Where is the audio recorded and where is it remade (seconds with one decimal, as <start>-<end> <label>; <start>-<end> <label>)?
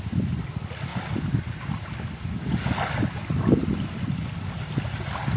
0.0-5.4 recorded